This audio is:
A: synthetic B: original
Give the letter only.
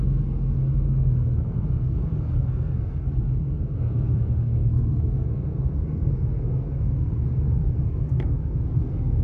A